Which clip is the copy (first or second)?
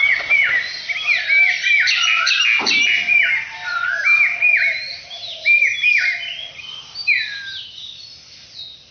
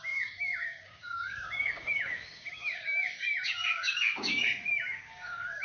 second